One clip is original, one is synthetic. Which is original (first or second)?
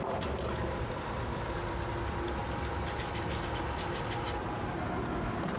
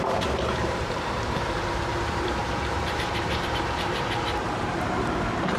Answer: first